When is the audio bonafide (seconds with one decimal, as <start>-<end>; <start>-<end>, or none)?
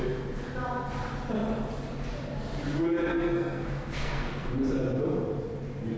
0.0-3.1; 4.5-6.0